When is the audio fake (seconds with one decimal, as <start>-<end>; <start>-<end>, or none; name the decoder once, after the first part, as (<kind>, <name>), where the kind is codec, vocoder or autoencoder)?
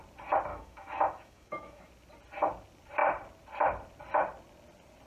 0.5-1.9 (autoencoder, DAC-VAE)